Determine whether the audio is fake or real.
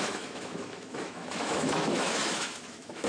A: fake